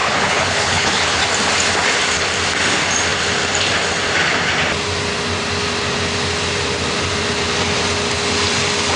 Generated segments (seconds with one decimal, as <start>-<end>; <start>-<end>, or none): 0.0-1.2